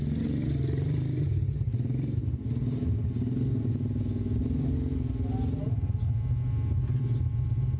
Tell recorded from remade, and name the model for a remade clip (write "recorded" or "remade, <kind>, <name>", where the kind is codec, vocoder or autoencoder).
recorded